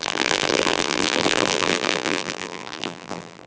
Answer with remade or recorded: remade